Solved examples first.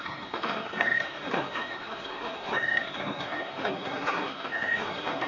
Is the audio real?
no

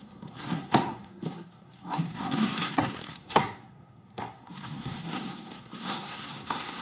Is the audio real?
no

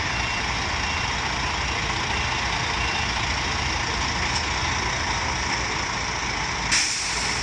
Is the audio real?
yes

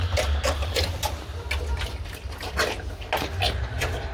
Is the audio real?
yes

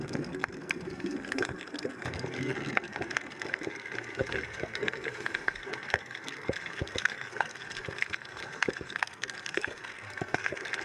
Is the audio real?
no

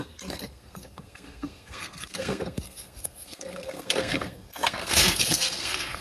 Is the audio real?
no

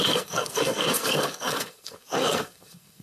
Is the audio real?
no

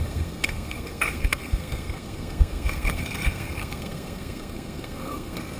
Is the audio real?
no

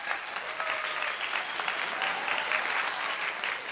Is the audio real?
yes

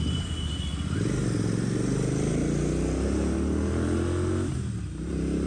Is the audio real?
yes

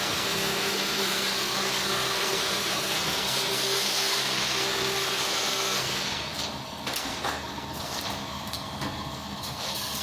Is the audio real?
no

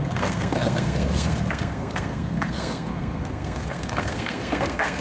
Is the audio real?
no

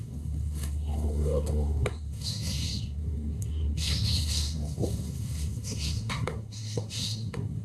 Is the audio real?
no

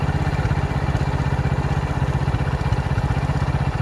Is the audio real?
yes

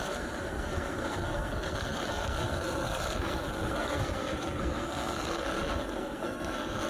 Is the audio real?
no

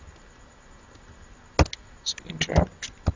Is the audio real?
yes